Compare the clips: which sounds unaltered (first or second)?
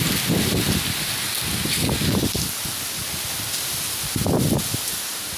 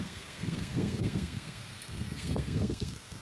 first